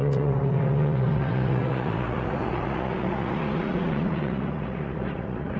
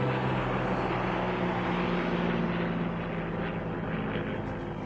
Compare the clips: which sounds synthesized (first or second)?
first